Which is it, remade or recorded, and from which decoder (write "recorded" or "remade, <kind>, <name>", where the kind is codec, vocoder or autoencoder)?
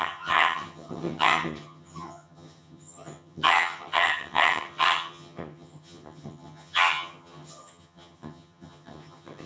remade, vocoder, HiFi-GAN